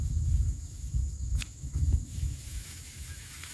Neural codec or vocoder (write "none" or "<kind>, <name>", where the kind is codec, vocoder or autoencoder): autoencoder, DAC-VAE